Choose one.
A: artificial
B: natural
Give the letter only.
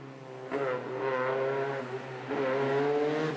B